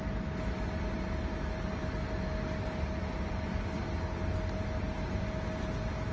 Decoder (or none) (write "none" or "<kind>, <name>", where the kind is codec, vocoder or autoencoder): none